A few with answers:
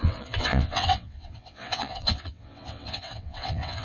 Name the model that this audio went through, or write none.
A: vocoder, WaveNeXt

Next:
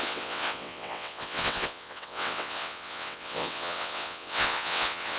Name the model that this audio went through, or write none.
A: vocoder, WaveNeXt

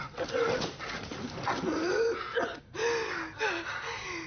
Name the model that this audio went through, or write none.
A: none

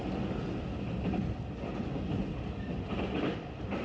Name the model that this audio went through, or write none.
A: none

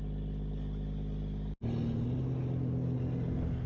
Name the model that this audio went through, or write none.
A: none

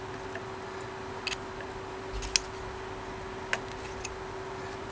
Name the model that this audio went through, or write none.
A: none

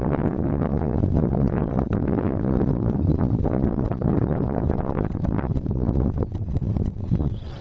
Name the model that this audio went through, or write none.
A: vocoder, WaveNeXt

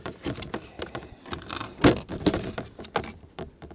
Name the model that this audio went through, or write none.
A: none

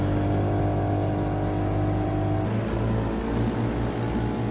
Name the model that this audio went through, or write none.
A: none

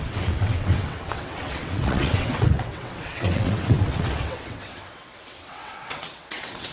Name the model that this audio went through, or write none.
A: vocoder, WaveNeXt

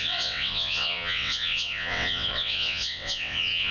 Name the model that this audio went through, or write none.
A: vocoder, WaveNeXt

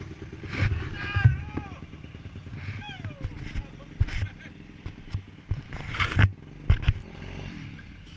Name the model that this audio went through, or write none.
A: none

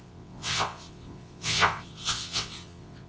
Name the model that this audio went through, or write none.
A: vocoder, WaveNeXt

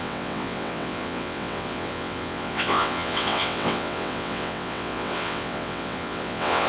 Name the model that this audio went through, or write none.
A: vocoder, WaveNeXt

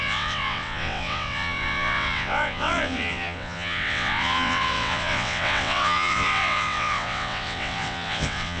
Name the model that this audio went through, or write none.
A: vocoder, WaveNeXt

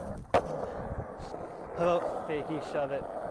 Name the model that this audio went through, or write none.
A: none